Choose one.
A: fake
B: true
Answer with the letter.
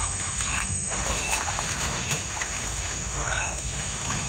A